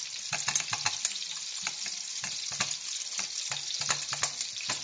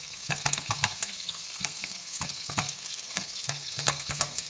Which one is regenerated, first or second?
second